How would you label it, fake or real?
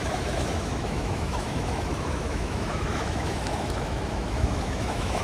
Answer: fake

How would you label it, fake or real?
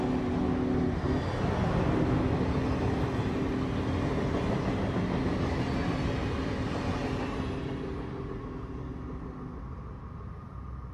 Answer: real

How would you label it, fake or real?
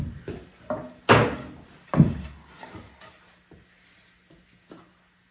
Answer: real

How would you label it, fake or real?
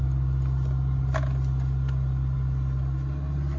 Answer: real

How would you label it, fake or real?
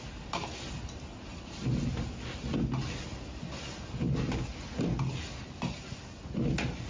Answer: real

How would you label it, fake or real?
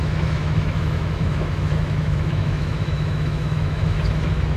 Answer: fake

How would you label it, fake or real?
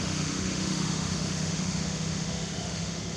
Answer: fake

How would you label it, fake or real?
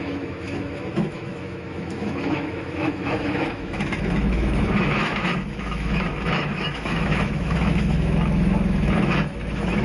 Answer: fake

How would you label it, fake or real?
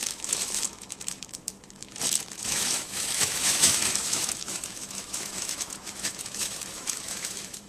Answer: fake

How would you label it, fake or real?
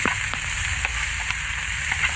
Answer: real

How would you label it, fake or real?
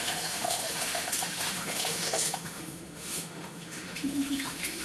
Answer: fake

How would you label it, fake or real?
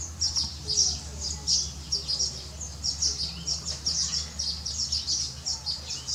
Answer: real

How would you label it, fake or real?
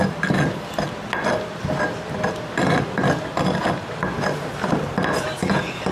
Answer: real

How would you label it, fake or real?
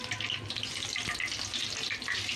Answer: real